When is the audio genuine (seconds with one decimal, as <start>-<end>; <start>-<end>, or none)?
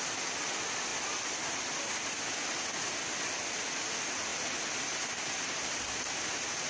0.0-6.7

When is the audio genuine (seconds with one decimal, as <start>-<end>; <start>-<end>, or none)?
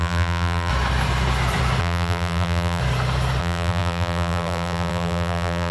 0.7-1.8; 2.8-3.4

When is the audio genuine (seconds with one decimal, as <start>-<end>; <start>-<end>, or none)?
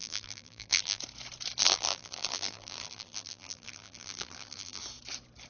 1.0-1.6; 4.8-5.5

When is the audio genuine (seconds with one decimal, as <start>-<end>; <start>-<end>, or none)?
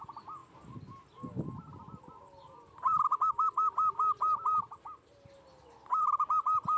0.0-6.8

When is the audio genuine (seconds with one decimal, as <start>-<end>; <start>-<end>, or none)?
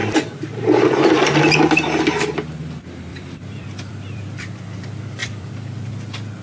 0.0-3.1; 4.8-5.2; 5.9-6.4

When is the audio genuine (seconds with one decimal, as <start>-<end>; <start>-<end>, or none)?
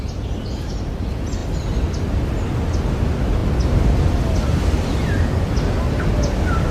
0.0-6.7